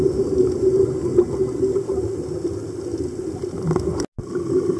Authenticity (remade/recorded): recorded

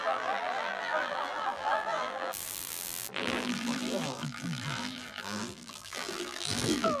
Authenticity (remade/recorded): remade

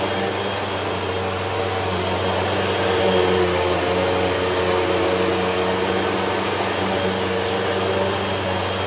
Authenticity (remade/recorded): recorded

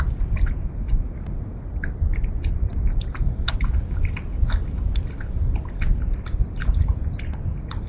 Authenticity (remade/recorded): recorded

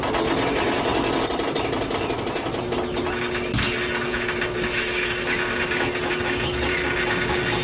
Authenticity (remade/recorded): recorded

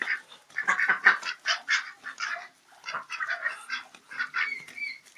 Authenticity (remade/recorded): remade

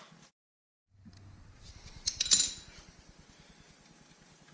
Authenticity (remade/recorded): recorded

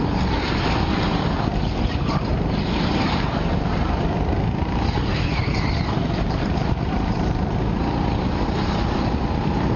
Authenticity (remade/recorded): remade